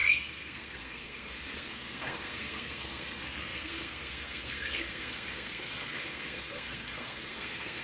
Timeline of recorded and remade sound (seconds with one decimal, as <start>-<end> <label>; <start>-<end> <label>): 0.0-7.8 remade